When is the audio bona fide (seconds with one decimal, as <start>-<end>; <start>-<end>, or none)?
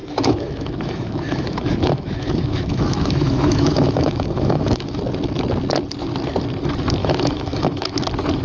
5.0-7.0; 8.0-8.4